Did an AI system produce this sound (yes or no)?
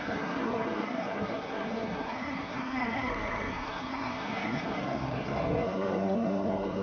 yes